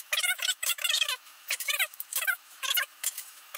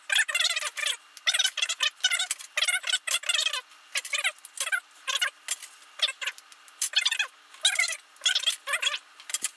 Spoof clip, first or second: first